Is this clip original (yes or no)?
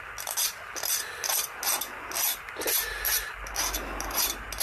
yes